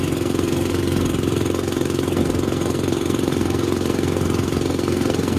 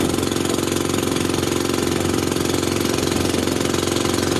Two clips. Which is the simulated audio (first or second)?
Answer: first